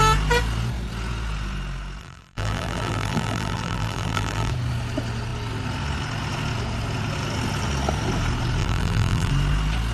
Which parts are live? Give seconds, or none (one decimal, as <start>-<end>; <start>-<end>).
0.0-2.0; 4.5-8.6; 9.3-9.9